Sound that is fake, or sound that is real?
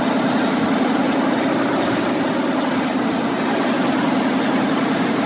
real